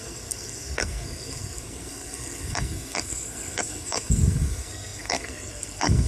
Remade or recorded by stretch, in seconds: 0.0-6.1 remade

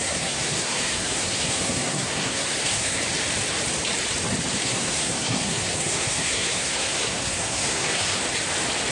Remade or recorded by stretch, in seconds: 0.0-3.0 remade; 3.0-4.6 recorded; 4.6-8.2 remade; 8.2-8.9 recorded

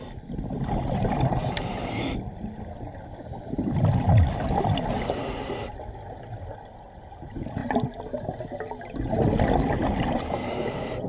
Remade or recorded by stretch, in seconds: 0.0-11.1 recorded